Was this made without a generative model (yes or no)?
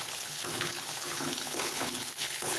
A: no